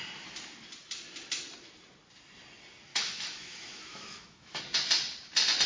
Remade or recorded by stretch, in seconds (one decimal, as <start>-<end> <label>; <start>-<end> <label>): 0.0-2.9 recorded; 2.9-4.6 remade; 4.6-5.7 recorded